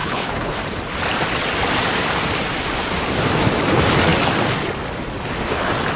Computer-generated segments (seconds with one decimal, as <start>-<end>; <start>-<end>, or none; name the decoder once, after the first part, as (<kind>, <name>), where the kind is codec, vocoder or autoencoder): 0.0-0.6 (codec, HILCodec)